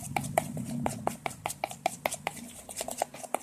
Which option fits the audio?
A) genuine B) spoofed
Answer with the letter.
A